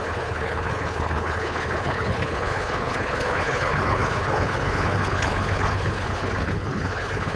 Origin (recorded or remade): remade